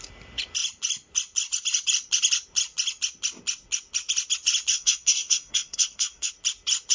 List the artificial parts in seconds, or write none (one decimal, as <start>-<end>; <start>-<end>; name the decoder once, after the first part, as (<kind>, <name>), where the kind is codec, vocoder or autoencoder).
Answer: 4.7-6.3 (codec, SNAC)